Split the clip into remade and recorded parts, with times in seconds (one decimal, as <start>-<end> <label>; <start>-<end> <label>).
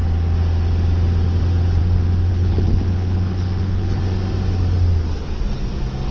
0.0-2.3 recorded; 2.3-4.0 remade; 4.0-6.1 recorded